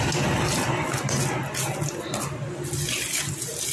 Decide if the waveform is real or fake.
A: real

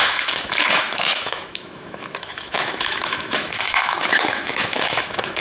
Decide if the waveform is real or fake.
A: fake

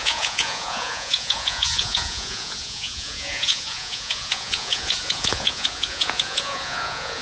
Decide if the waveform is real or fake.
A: fake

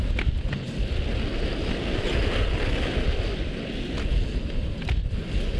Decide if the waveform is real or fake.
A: real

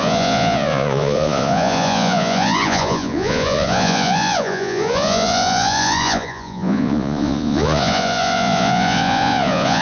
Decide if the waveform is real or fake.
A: fake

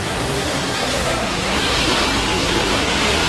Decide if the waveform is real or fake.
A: fake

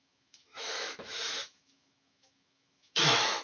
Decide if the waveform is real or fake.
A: fake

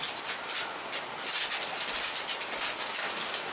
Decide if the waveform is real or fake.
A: real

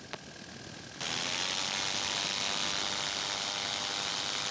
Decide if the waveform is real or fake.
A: real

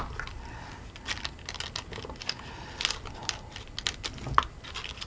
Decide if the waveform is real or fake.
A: real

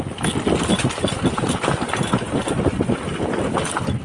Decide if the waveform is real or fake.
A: real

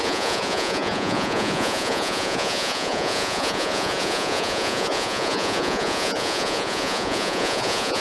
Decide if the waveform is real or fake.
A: fake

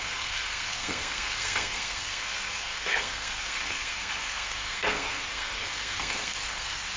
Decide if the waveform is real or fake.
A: fake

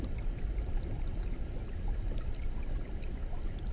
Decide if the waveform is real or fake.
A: real